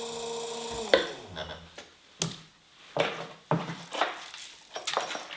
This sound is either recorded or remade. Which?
recorded